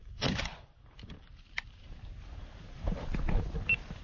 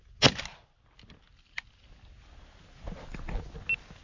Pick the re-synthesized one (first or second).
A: first